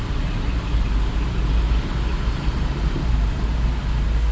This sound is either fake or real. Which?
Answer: real